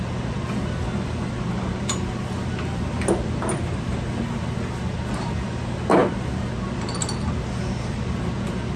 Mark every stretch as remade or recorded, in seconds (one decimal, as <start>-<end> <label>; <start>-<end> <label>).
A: 0.0-8.8 recorded